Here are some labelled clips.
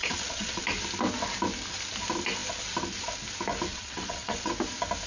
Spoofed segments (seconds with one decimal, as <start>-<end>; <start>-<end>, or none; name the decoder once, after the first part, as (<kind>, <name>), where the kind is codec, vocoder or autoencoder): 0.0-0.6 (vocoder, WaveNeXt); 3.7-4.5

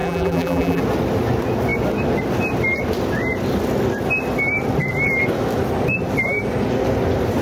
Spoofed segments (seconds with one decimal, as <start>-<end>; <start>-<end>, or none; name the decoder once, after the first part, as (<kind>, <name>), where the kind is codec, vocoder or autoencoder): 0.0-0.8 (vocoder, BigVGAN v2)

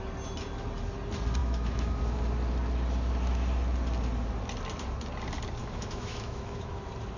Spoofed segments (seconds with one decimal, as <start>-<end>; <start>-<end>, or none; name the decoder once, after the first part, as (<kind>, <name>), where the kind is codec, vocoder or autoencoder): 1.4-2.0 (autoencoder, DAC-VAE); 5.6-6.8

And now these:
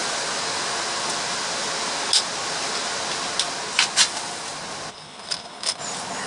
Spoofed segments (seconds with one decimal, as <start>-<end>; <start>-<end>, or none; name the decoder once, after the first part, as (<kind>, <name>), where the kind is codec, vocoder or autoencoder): 4.9-5.8 (codec, HILCodec)

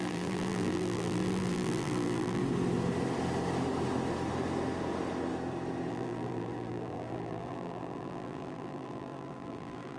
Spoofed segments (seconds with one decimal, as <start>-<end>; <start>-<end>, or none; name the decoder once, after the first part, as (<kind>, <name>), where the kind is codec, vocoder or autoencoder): 0.0-2.4 (vocoder, BigVGAN v2); 5.9-10.0